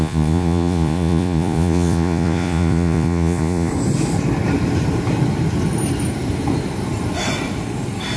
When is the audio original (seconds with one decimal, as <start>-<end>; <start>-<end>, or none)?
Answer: 3.7-8.2